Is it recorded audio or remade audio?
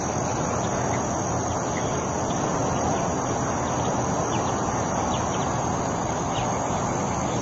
recorded